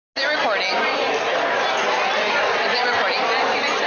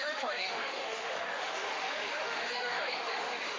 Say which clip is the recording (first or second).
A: first